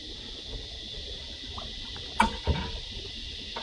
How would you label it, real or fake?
real